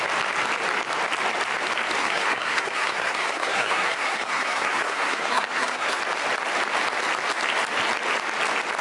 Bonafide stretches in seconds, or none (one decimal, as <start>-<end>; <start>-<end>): 0.0-2.0; 6.0-8.8